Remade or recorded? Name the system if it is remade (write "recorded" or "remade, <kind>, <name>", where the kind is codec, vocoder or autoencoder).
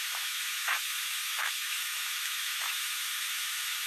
remade, autoencoder, DAC-VAE